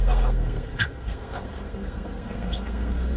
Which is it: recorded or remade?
remade